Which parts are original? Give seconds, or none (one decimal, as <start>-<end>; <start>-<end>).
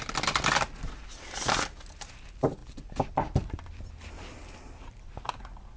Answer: 0.0-2.6; 3.9-5.8